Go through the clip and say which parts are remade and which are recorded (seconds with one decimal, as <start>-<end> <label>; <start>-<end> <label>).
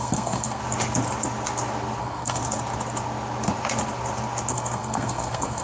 0.0-0.6 remade; 0.6-2.0 recorded; 2.0-2.4 remade; 2.4-4.5 recorded; 4.5-5.6 remade